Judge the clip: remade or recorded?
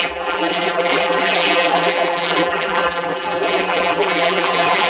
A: remade